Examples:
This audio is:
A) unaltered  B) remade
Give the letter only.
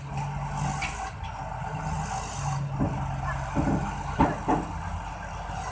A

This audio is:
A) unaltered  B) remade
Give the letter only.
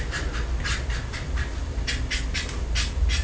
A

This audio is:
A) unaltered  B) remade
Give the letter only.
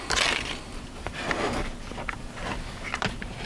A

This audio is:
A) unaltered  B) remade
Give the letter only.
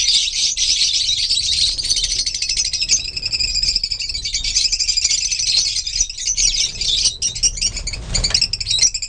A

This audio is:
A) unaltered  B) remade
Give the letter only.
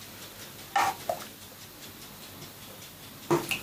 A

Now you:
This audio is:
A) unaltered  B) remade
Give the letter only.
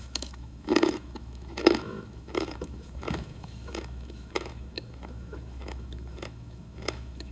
B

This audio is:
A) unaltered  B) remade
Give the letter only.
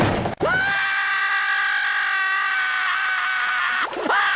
A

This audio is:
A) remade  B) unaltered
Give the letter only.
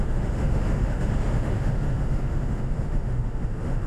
A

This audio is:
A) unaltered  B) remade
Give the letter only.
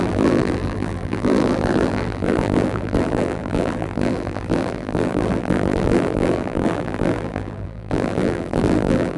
B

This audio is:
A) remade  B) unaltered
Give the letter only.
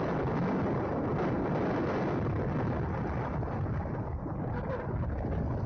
B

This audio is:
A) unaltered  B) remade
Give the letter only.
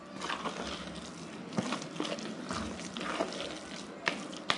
A